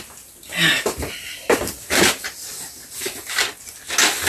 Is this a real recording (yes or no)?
yes